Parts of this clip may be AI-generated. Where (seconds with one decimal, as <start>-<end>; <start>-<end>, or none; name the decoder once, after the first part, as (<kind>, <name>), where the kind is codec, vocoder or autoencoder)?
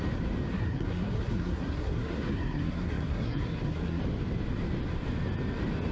0.5-4.0 (codec, SNAC)